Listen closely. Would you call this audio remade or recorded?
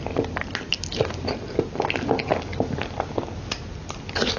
recorded